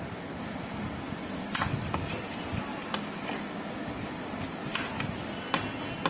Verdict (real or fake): real